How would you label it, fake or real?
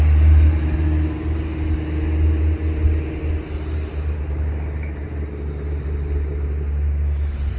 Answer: real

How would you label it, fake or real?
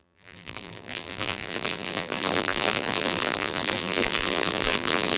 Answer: fake